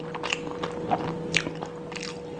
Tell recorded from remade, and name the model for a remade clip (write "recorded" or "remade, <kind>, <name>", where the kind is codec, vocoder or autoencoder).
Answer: recorded